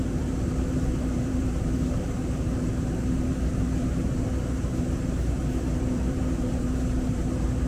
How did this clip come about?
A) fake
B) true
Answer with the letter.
A